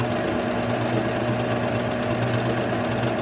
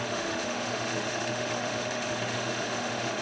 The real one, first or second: first